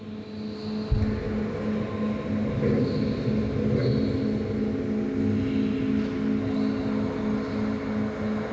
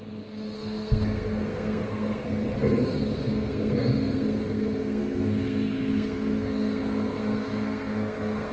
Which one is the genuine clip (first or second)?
first